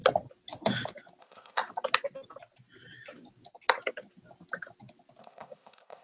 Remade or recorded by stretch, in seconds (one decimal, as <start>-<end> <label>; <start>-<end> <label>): 0.0-1.2 recorded; 1.2-1.6 remade; 1.6-5.2 recorded; 5.2-6.0 remade